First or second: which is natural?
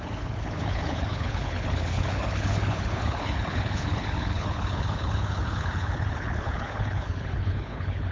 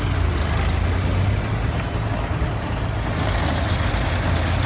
second